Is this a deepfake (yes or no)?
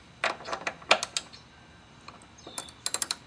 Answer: no